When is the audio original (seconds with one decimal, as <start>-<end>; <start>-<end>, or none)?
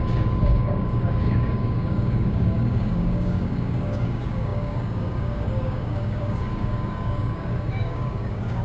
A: none